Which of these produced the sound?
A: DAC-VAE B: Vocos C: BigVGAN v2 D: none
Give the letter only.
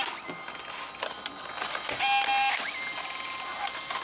D